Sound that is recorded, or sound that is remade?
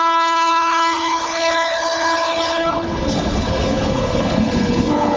remade